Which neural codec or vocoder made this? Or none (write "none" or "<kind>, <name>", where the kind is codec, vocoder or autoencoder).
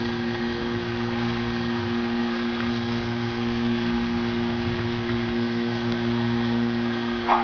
codec, SNAC